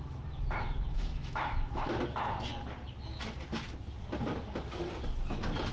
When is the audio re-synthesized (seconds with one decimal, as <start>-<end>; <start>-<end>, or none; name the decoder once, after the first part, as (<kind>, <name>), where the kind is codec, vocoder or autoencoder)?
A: 0.9-2.0 (autoencoder, DAC-VAE)